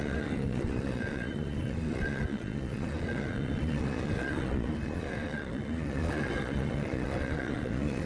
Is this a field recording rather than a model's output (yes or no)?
no